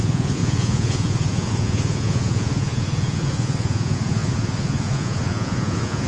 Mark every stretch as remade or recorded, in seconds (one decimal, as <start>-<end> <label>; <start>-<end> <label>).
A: 0.0-6.1 remade